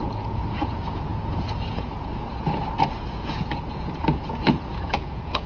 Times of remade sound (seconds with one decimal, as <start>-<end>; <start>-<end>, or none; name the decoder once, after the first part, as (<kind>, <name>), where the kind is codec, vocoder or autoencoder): 0.0-5.5 (vocoder, Vocos)

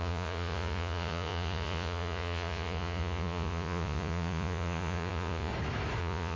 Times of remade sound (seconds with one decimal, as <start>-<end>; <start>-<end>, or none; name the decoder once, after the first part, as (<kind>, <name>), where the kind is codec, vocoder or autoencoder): 0.0-5.5 (vocoder, Vocos); 6.0-6.4